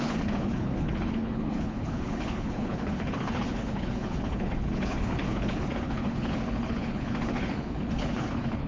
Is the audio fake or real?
fake